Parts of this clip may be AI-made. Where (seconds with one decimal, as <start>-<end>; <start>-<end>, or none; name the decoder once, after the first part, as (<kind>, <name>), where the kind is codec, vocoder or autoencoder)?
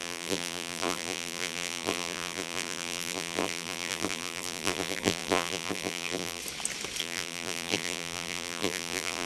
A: 0.0-6.4 (vocoder, BigVGAN v2); 7.0-9.3